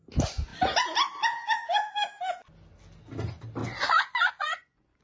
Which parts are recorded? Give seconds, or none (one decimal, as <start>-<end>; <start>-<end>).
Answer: 0.0-3.6